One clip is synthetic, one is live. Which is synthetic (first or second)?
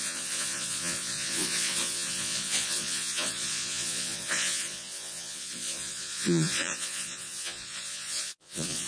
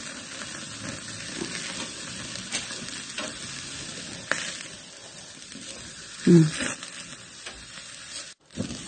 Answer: first